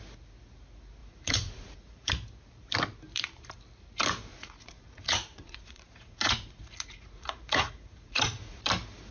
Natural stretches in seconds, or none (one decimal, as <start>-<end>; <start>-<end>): 0.0-1.0; 2.1-4.3; 8.6-9.1